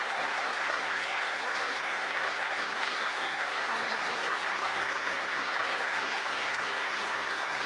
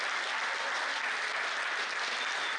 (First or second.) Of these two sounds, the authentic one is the second